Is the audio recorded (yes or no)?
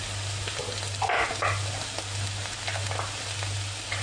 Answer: yes